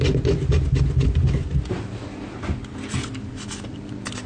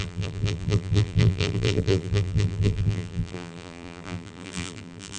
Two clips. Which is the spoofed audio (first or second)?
second